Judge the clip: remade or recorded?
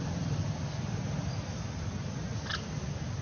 remade